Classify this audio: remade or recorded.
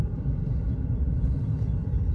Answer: remade